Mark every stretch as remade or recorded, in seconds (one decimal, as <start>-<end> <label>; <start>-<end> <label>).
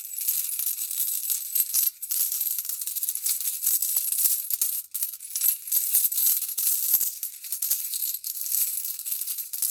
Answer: 0.0-3.8 remade; 3.8-5.9 recorded; 5.9-9.7 remade